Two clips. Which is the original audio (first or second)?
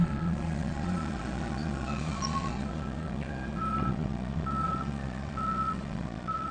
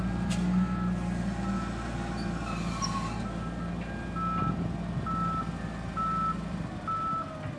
second